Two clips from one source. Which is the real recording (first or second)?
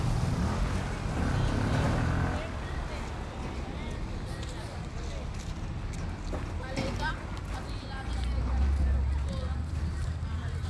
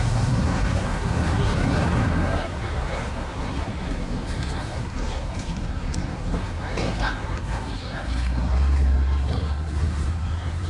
first